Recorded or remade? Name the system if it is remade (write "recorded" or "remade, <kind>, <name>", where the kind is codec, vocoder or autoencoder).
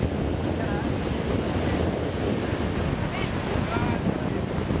recorded